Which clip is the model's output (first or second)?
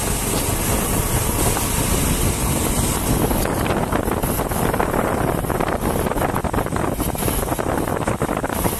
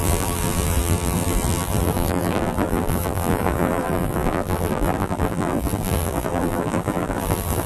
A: second